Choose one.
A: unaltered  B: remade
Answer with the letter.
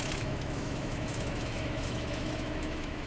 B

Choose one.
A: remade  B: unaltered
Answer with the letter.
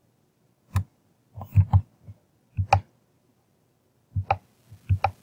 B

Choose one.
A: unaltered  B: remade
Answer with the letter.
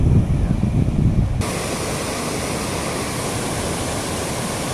A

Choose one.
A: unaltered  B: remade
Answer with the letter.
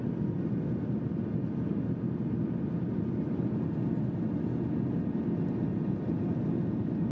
A